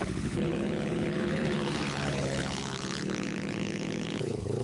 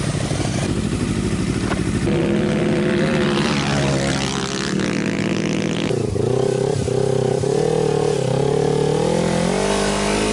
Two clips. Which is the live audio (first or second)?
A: second